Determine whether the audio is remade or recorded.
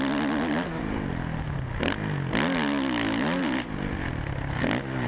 recorded